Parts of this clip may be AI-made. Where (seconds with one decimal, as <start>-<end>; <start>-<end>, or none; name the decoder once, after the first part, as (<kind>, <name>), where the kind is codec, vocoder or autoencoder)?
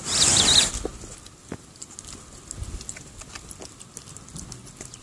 none